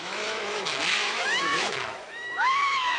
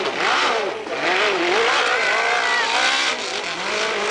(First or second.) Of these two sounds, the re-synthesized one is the first